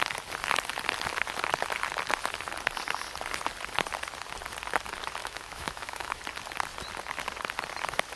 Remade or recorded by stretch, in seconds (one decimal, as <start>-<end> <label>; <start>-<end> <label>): 0.0-5.2 recorded; 5.2-6.2 remade; 6.2-8.2 recorded